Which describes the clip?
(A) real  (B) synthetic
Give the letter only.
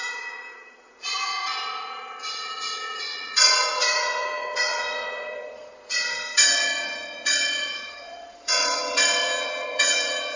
B